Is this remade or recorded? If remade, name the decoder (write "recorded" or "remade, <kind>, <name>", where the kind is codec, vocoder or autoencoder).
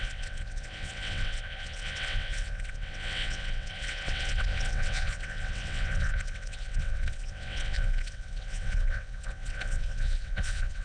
remade, vocoder, WaveNeXt